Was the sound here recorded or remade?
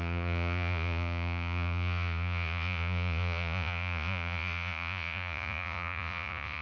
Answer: remade